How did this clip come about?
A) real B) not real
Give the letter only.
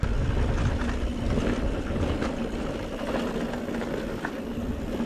A